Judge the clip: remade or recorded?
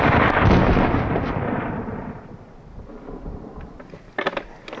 recorded